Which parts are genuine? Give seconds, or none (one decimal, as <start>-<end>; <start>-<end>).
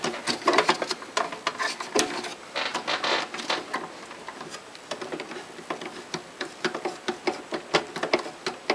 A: 0.0-8.7